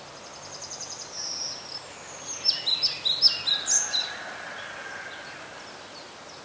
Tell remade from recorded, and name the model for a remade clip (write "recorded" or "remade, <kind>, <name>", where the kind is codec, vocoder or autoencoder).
recorded